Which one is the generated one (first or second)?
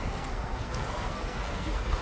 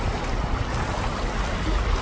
first